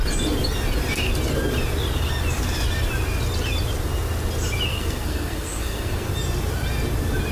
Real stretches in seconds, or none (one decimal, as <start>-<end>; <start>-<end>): 0.0-4.7; 6.1-7.3